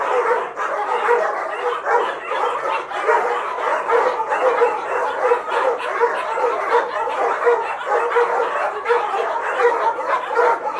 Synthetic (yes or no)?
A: no